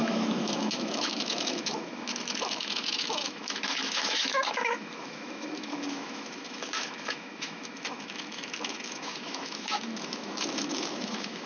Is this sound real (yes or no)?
no